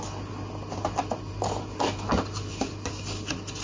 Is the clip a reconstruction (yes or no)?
no